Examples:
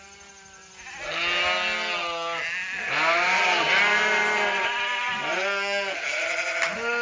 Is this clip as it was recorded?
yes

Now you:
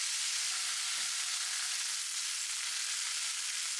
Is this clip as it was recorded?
yes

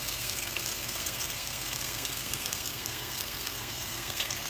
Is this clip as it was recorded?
no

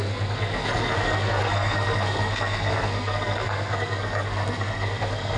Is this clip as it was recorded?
no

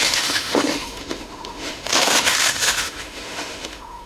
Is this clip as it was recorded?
no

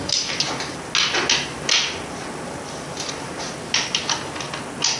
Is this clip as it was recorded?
yes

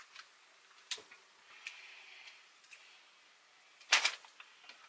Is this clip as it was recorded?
yes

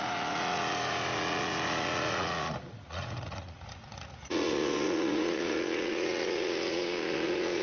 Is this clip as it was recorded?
no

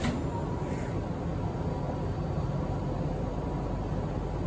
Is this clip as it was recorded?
yes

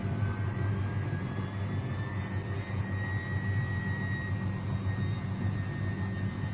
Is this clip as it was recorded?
yes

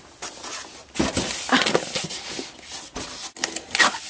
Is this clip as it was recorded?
yes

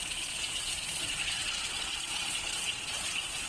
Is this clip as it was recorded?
no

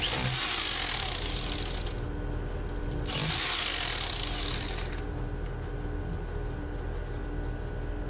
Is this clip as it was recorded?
yes